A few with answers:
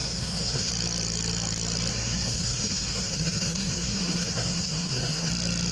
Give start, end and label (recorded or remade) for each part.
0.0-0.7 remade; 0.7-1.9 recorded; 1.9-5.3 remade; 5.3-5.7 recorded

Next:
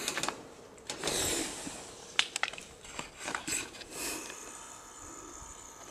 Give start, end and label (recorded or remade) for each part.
0.0-5.9 recorded

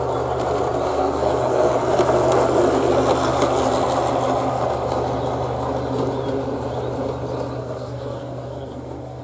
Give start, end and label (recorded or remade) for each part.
0.0-0.9 recorded; 0.9-1.7 remade; 1.7-7.6 recorded; 7.6-9.2 remade

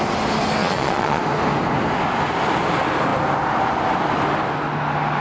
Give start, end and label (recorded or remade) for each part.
0.0-0.6 recorded; 0.6-1.2 remade; 1.2-5.2 recorded